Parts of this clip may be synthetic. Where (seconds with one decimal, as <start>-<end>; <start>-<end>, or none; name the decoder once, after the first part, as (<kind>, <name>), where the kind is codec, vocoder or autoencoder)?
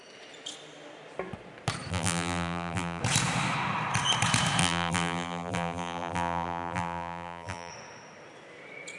1.9-3.0 (vocoder, BigVGAN v2); 4.6-7.7